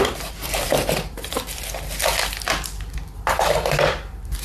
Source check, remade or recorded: remade